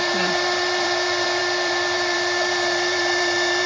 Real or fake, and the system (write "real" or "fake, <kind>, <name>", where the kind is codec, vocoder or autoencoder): fake, vocoder, BigVGAN v2